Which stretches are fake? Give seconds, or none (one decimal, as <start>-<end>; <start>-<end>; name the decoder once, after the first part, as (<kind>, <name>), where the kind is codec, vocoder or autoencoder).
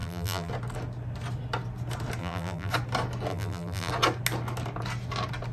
0.0-0.5 (vocoder, BigVGAN v2); 2.2-2.7; 3.3-3.9